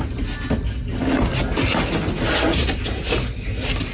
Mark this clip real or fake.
real